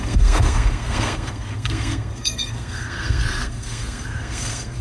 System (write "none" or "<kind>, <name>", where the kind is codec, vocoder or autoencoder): codec, SNAC